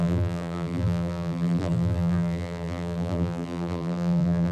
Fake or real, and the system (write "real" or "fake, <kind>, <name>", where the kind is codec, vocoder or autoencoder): fake, vocoder, BigVGAN v2